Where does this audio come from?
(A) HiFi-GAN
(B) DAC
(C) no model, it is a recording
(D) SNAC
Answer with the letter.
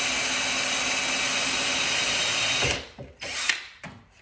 C